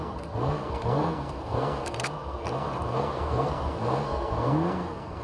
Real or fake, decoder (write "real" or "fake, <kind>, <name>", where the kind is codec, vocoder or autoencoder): fake, codec, SNAC